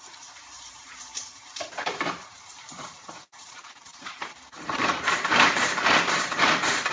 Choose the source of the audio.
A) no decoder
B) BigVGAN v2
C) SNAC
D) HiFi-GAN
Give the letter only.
B